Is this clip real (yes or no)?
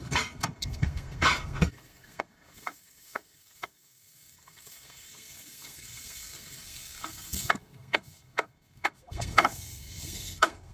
no